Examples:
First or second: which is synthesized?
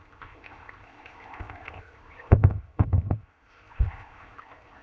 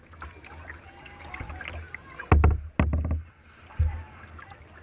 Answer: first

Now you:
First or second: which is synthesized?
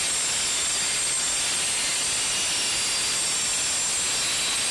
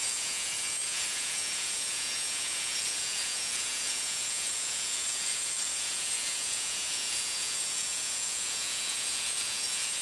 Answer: second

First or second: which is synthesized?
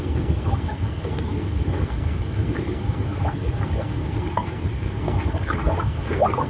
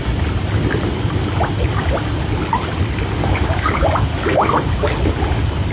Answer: first